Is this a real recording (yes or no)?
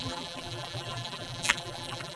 no